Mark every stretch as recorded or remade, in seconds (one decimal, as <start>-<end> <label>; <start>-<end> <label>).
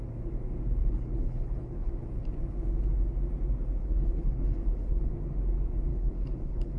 0.0-0.8 recorded; 0.8-1.9 remade; 1.9-3.8 recorded; 3.8-5.1 remade; 5.1-5.9 recorded; 5.9-6.8 remade